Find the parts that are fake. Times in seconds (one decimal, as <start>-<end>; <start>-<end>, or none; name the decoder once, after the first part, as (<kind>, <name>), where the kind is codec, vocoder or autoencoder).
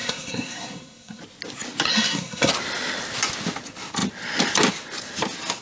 0.0-1.2 (codec, SNAC); 1.9-2.5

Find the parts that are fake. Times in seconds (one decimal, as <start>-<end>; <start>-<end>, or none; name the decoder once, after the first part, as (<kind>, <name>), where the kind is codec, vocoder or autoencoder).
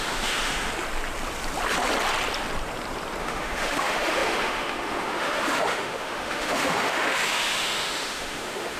0.0-0.7 (autoencoder, DAC-VAE); 3.2-8.8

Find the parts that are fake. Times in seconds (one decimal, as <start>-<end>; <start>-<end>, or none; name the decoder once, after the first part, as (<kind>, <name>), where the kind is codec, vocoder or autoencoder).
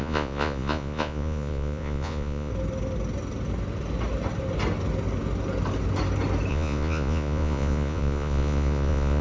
0.0-2.5 (vocoder, Vocos); 6.5-9.2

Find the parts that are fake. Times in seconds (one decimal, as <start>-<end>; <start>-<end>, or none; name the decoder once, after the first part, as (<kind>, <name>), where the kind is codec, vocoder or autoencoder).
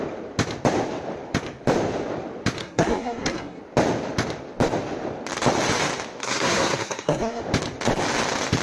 2.6-3.6 (codec, SNAC); 6.2-7.4